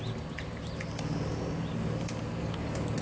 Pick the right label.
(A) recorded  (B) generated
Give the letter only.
A